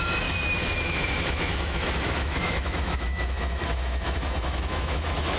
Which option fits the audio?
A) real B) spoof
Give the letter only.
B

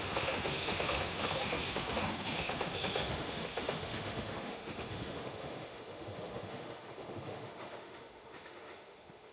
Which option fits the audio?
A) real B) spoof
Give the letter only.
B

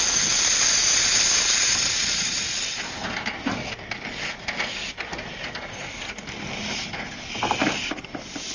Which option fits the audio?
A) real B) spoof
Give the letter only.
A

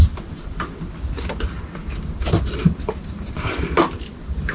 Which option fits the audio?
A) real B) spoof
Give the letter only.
A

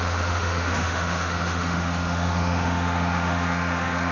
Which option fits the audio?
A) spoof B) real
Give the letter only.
A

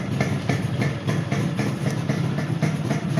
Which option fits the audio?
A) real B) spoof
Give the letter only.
A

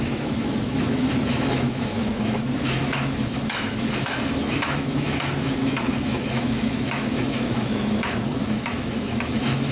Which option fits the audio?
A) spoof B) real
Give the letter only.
A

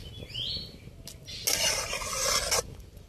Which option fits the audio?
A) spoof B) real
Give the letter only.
B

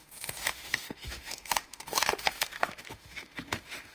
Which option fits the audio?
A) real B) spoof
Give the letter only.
B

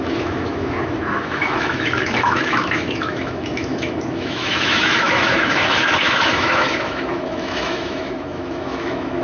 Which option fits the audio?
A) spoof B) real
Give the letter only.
A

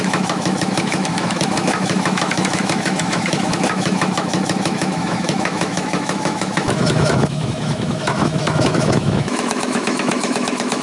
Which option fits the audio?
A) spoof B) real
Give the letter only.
A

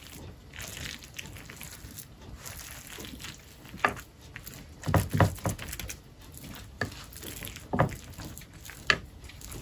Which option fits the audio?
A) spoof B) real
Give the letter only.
B